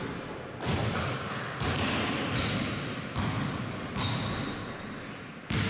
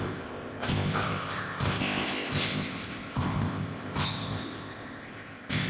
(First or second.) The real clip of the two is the first